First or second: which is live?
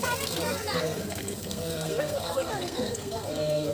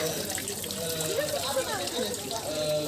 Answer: second